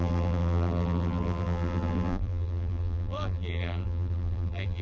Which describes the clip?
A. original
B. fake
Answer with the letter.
B